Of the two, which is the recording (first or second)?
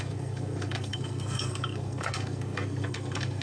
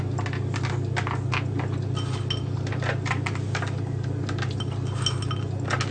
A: second